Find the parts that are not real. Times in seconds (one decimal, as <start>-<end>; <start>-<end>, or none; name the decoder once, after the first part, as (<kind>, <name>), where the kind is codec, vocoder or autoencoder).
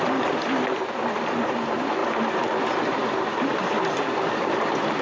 none